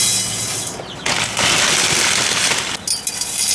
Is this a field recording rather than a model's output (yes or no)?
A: yes